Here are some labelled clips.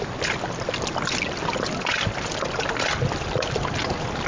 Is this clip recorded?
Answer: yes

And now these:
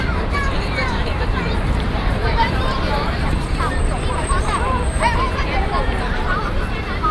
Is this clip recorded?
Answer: no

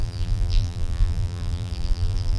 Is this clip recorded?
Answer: no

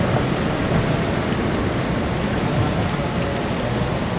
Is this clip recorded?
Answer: yes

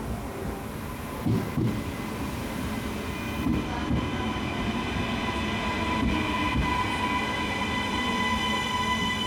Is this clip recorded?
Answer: yes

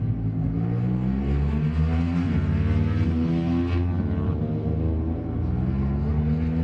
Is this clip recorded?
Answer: yes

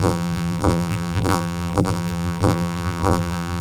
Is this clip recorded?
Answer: no